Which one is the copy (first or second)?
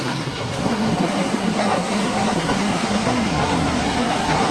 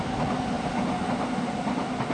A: first